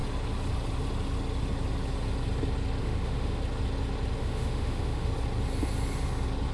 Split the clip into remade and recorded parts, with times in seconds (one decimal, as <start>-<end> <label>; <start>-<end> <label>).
0.0-2.8 recorded; 2.8-3.4 remade; 3.4-4.2 recorded; 4.2-5.1 remade; 5.1-6.5 recorded